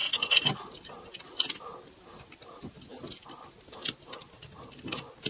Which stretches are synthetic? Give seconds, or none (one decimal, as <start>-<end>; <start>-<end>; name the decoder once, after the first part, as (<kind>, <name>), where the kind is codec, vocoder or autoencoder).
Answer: none